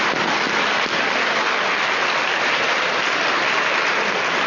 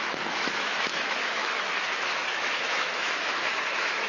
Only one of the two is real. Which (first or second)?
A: first